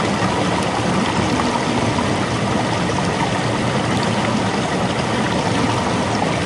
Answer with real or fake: real